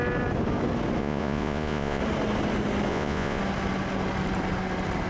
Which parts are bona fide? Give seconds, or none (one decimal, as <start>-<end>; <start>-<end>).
0.0-1.0; 2.0-2.9; 3.4-5.1